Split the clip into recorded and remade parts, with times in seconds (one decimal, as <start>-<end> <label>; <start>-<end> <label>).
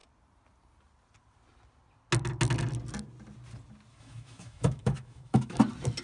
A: 0.0-3.9 recorded; 3.9-5.6 remade; 5.6-6.0 recorded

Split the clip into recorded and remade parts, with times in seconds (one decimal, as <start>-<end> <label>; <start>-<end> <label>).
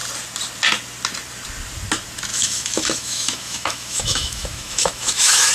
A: 0.0-2.3 recorded; 2.3-5.5 remade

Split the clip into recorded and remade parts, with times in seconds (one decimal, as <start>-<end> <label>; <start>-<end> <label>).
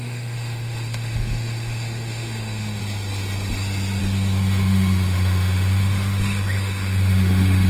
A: 0.0-2.8 remade; 2.8-4.0 recorded; 4.0-7.7 remade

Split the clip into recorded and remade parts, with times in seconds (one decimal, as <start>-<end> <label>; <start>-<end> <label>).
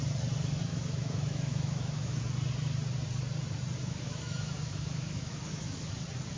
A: 0.0-0.7 recorded; 0.7-2.2 remade; 2.2-3.8 recorded; 3.8-6.0 remade; 6.0-6.4 recorded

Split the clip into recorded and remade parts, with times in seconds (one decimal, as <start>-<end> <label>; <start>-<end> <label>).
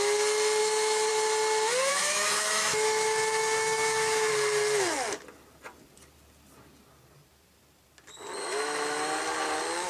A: 0.0-0.6 recorded; 0.6-1.1 remade; 1.1-1.9 recorded; 1.9-4.3 remade; 4.3-8.4 recorded; 8.4-9.2 remade; 9.2-9.9 recorded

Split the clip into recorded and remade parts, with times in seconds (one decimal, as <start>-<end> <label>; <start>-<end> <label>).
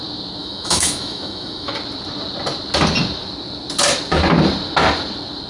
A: 0.0-0.4 recorded; 0.4-1.7 remade; 1.7-5.5 recorded